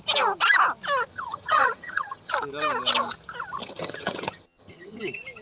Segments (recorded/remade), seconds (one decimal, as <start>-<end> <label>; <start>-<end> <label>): 0.0-1.1 recorded; 1.1-2.3 remade; 2.3-3.6 recorded; 3.6-5.0 remade; 5.0-5.4 recorded